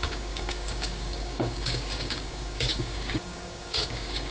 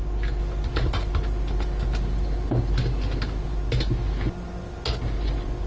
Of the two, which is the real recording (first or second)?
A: second